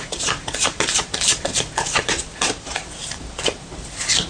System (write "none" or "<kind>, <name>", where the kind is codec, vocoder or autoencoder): vocoder, BigVGAN v2